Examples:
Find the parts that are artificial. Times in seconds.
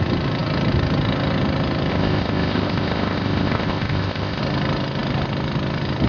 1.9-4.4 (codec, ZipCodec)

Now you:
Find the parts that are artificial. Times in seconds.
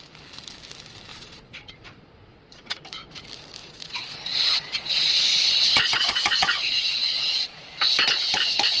1.1-2.8 (vocoder, Vocos); 3.6-7.6